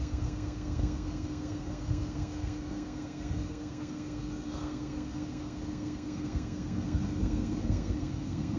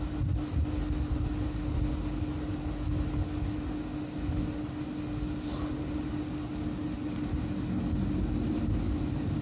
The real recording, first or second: second